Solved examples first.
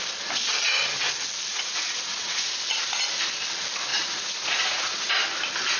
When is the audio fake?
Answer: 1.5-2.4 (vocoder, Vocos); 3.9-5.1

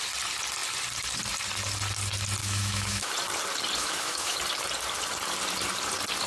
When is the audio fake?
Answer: 2.4-3.1 (autoencoder, DAC-VAE); 3.8-4.4

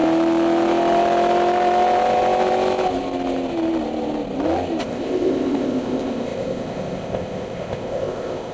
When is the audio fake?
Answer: 4.8-8.5 (codec, ZipCodec)

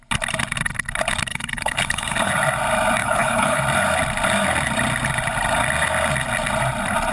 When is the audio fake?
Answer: 1.3-2.3 (codec, HILCodec); 3.0-3.6

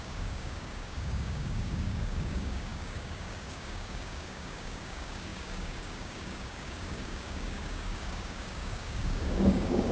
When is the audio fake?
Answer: 0.0-9.9 (codec, DAC)